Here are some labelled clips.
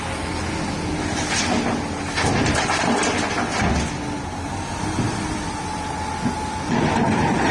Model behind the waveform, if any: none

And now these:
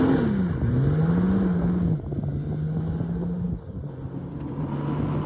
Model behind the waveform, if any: none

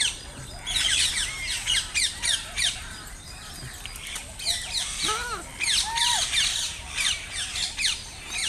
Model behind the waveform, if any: none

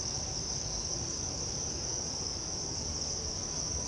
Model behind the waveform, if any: codec, DAC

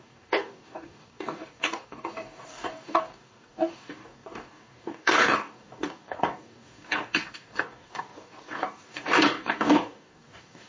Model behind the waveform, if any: codec, DAC